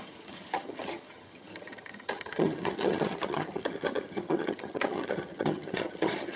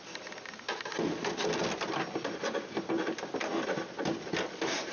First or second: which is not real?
first